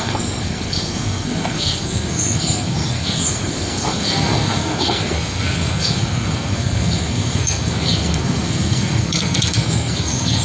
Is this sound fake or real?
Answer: fake